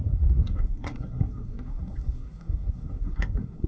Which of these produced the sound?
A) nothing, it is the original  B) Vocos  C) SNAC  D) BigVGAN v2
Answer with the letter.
C